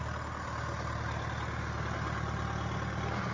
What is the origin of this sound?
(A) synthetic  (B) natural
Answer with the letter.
B